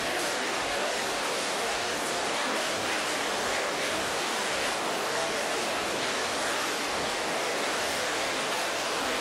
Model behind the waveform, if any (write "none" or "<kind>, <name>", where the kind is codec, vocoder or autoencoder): codec, DAC